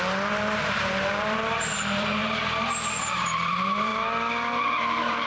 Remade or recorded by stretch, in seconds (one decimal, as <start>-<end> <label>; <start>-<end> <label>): 0.0-2.2 remade; 2.2-3.0 recorded; 3.0-3.9 remade; 3.9-4.6 recorded; 4.6-5.3 remade